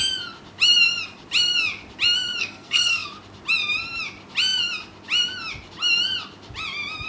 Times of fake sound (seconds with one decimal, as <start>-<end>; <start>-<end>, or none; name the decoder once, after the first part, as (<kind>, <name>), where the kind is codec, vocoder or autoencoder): 2.4-3.1 (codec, SNAC)